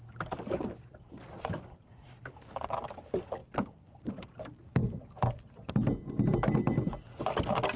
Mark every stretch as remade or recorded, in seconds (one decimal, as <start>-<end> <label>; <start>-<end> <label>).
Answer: 0.0-7.8 recorded